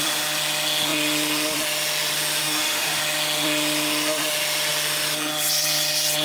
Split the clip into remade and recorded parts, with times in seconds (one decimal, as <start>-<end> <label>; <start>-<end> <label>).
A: 0.0-2.4 recorded; 2.4-3.0 remade; 3.0-6.2 recorded